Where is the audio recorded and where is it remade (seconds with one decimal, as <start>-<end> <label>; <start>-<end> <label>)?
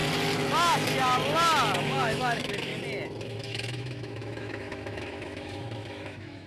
0.0-1.8 recorded; 1.8-2.7 remade; 2.7-3.2 recorded; 3.2-6.5 remade